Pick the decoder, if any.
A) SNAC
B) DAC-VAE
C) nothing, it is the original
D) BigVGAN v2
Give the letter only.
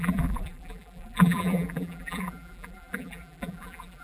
D